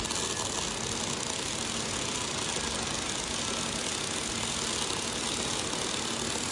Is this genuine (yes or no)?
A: yes